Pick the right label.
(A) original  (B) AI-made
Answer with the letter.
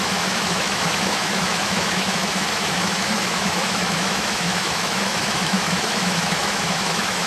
B